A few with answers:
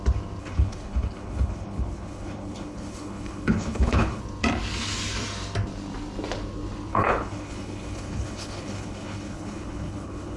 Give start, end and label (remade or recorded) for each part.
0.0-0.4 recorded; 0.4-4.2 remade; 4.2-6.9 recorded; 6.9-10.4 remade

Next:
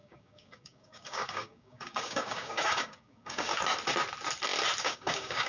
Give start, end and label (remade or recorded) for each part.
0.0-3.5 remade; 3.5-4.8 recorded; 4.8-5.5 remade

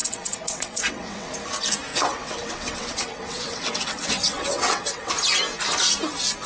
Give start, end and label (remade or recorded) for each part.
0.0-1.3 remade; 1.3-1.9 recorded; 1.9-5.1 remade; 5.1-6.5 recorded

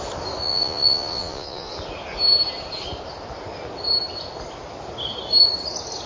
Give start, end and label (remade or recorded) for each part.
0.0-0.4 recorded; 0.4-1.7 remade; 1.7-6.1 recorded